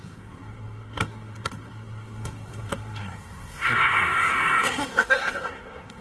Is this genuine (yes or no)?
no